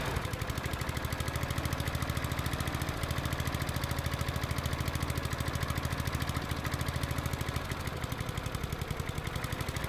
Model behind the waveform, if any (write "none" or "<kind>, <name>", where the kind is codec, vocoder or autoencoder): none